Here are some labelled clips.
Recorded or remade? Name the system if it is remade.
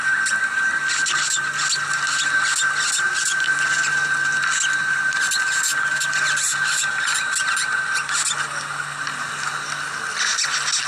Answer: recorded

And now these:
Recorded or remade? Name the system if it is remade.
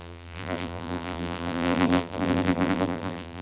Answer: remade, vocoder, BigVGAN v2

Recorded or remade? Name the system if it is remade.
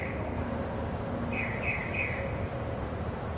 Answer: recorded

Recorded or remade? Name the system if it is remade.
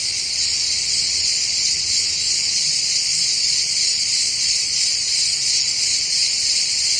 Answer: remade, vocoder, Vocos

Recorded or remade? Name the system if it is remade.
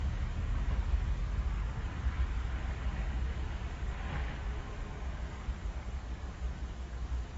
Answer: remade, codec, DAC